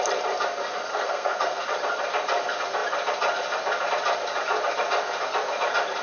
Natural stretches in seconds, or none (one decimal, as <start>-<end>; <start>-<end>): 0.0-0.9; 1.6-6.0